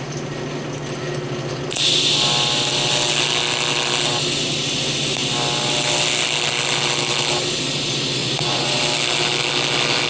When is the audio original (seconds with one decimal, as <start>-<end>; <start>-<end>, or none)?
0.0-8.2; 8.8-10.1